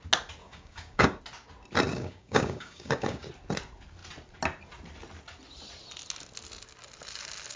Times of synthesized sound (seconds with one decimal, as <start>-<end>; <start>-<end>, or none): 0.4-1.2; 1.9-3.3